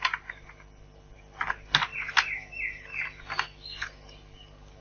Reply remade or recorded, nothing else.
recorded